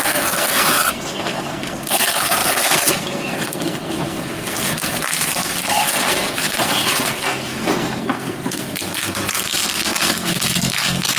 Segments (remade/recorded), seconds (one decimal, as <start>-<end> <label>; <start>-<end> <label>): 0.0-11.2 remade